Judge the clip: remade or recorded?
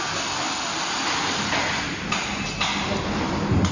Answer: recorded